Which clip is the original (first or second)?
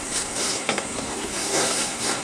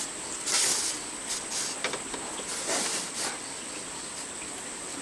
second